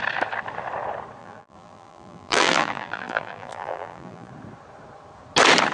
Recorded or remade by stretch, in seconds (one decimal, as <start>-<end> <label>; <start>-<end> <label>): 0.0-1.2 recorded; 1.2-4.3 remade; 4.3-5.7 recorded